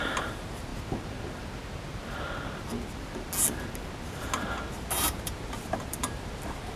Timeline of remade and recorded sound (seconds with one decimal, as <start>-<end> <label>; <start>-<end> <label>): 0.0-0.7 remade; 0.7-4.8 recorded; 4.8-6.8 remade